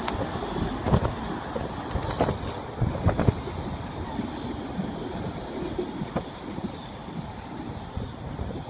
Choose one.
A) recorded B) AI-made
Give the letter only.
A